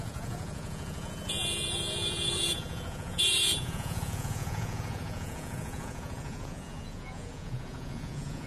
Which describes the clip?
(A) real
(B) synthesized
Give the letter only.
B